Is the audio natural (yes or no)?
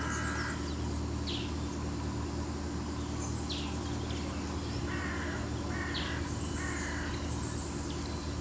yes